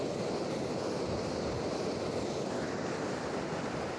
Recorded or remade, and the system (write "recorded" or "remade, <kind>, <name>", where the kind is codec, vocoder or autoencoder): recorded